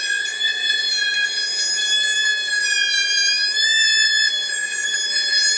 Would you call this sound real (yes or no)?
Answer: yes